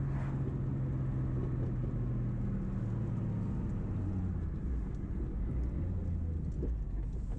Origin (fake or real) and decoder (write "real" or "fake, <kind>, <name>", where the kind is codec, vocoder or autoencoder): real